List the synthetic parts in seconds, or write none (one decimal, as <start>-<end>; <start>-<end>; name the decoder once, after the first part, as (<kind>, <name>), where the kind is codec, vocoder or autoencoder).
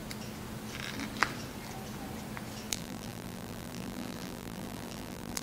2.7-5.4 (vocoder, BigVGAN v2)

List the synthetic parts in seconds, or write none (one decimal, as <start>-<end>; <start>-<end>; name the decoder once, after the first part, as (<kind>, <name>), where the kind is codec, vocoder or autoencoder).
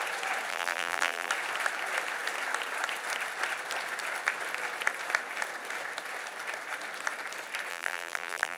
0.5-1.3 (vocoder, BigVGAN v2); 7.7-8.6